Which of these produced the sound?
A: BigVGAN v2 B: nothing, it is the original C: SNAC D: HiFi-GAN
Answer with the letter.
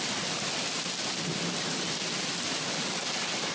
B